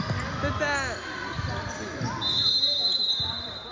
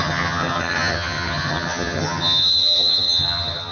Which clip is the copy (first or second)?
second